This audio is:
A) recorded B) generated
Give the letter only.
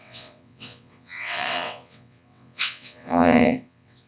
B